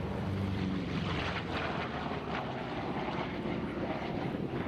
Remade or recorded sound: remade